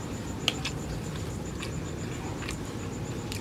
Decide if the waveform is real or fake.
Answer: real